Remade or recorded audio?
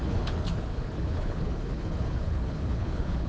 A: remade